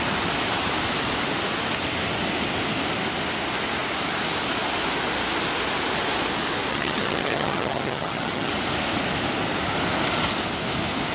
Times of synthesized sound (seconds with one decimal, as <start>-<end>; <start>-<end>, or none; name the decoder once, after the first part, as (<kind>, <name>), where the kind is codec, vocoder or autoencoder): 6.7-8.5 (vocoder, HiFi-GAN)